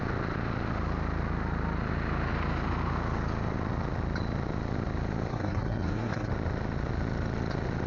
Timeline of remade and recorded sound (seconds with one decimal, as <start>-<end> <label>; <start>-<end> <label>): 0.0-5.3 recorded; 5.3-6.3 remade; 6.3-7.9 recorded

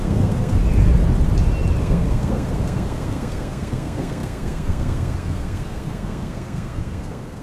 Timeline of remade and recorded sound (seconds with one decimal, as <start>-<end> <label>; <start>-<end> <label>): 0.0-0.6 remade; 0.6-1.8 recorded; 1.8-7.4 remade

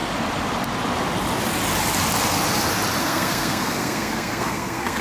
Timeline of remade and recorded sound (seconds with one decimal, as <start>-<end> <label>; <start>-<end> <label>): 0.0-3.0 recorded; 3.0-5.0 remade

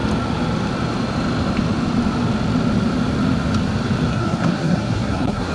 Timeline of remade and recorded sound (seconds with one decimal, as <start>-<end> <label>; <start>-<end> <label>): 0.0-4.1 recorded; 4.1-5.5 remade

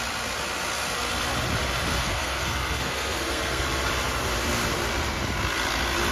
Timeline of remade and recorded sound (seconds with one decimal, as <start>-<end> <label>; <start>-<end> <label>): 0.0-2.0 recorded; 2.0-3.6 remade; 3.6-6.1 recorded

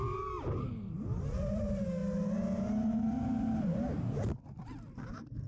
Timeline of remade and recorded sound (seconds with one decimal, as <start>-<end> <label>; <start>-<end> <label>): 0.0-5.5 recorded